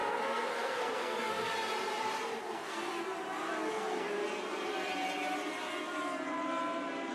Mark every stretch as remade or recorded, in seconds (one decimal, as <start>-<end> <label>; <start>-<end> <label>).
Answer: 0.0-1.5 remade; 1.5-2.4 recorded; 2.4-2.9 remade; 2.9-3.7 recorded; 3.7-4.2 remade; 4.2-7.1 recorded